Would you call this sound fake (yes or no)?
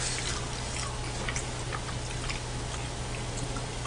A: no